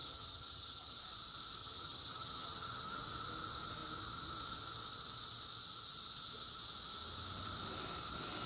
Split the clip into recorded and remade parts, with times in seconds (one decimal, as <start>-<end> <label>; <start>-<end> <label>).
0.0-1.0 remade; 1.0-1.6 recorded; 1.6-3.0 remade; 3.0-8.5 recorded